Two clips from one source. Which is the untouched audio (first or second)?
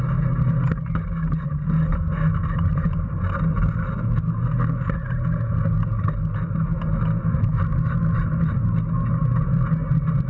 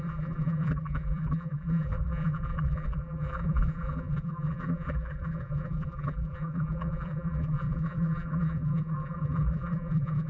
first